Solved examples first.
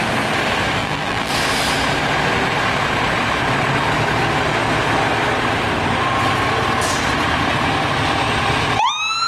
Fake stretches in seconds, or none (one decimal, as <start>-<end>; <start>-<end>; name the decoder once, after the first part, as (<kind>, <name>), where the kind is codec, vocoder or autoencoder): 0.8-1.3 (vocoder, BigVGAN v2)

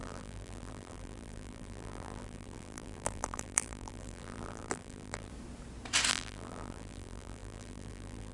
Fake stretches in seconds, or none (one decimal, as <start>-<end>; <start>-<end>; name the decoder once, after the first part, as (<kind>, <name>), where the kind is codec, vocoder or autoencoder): 0.0-5.3 (vocoder, BigVGAN v2); 6.1-8.3

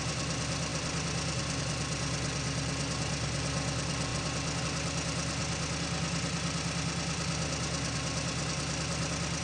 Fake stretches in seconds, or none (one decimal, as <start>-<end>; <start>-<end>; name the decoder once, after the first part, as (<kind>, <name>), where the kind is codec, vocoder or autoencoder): 0.0-0.7 (vocoder, BigVGAN v2); 1.6-4.1; 4.6-5.4; 8.6-9.4

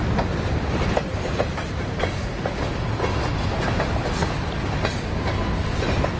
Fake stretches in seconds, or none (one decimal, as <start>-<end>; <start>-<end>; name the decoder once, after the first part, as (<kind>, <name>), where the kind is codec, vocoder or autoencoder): 1.1-2.8 (vocoder, BigVGAN v2)